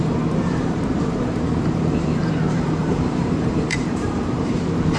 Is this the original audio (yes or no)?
no